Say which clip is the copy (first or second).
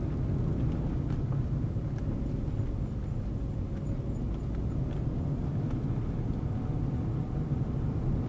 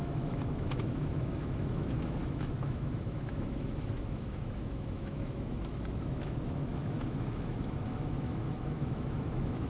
second